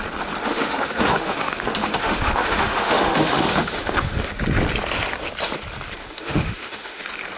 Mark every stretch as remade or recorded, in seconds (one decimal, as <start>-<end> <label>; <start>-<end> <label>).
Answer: 0.0-0.4 recorded; 0.4-4.3 remade; 4.3-6.0 recorded; 6.0-7.0 remade; 7.0-7.4 recorded